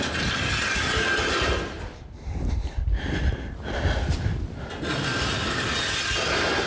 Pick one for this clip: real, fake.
real